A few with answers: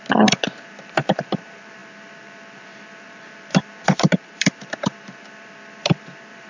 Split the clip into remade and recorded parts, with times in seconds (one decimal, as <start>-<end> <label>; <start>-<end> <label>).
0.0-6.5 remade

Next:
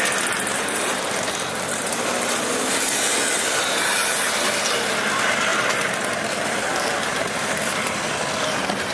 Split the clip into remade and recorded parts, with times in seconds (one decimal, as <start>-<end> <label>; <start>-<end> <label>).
0.0-0.5 recorded; 0.5-1.9 remade; 1.9-5.5 recorded; 5.5-8.0 remade; 8.0-8.9 recorded

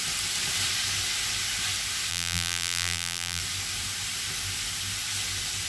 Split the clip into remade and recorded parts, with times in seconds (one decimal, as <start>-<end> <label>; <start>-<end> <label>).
0.0-2.1 recorded; 2.1-3.4 remade; 3.4-5.7 recorded

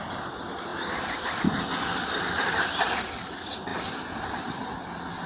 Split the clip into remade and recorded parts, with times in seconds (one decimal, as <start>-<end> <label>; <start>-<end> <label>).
0.0-0.7 recorded; 0.7-1.6 remade; 1.6-3.7 recorded; 3.7-4.7 remade; 4.7-5.3 recorded

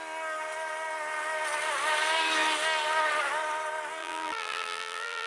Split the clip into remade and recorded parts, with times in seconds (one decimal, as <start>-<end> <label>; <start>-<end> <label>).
0.0-4.0 recorded; 4.0-5.3 remade